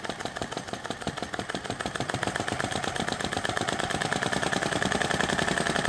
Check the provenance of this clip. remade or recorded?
recorded